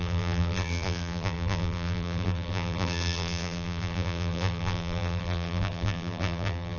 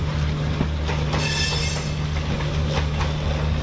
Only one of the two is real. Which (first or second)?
second